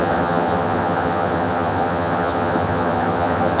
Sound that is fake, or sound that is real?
fake